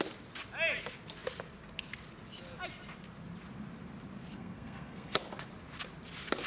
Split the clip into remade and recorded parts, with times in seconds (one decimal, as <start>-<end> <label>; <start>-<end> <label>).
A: 0.0-4.3 recorded; 4.3-5.2 remade; 5.2-6.5 recorded